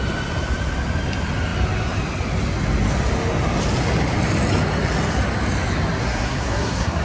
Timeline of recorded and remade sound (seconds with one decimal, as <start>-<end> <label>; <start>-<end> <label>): 0.0-6.0 recorded; 6.0-7.0 remade